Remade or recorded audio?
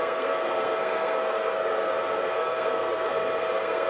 remade